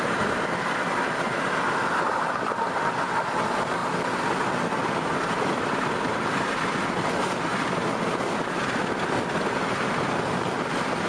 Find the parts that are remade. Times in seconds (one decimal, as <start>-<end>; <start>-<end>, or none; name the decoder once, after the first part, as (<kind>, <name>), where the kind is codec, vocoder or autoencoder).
none